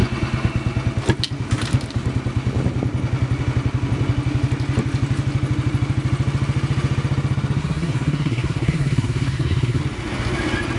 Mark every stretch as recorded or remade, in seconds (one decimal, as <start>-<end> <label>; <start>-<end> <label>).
0.0-7.6 recorded; 7.6-9.8 remade; 9.8-10.8 recorded